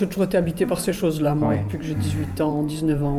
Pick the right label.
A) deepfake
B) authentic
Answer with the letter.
A